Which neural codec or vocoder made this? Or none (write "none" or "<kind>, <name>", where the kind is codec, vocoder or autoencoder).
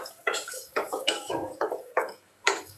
codec, DAC